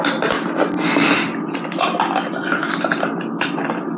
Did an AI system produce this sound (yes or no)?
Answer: no